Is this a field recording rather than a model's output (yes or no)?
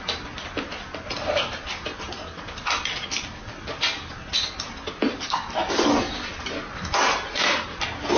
yes